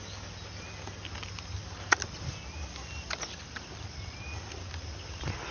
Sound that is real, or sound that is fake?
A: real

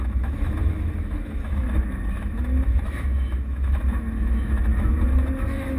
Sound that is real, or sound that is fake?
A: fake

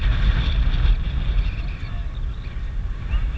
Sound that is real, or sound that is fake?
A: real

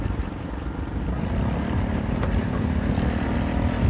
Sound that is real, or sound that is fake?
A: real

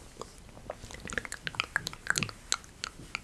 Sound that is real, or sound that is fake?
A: real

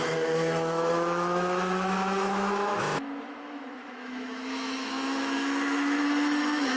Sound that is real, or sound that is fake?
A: fake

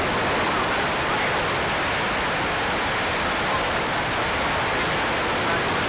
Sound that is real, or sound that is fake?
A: real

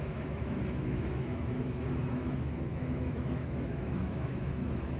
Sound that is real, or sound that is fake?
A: fake